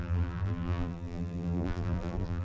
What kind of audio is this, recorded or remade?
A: remade